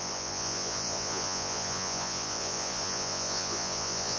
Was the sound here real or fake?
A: fake